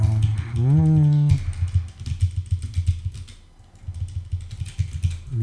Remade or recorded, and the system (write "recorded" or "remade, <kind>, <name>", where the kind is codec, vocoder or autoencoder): recorded